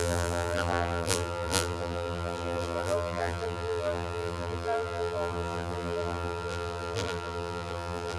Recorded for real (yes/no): no